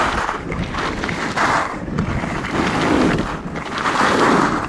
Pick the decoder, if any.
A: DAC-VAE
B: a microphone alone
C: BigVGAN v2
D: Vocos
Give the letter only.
B